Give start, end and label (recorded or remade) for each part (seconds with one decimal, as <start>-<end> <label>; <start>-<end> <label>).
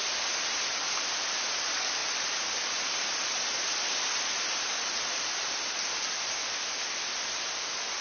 0.0-8.0 recorded